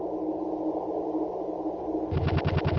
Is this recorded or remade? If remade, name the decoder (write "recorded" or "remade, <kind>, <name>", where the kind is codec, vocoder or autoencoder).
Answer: recorded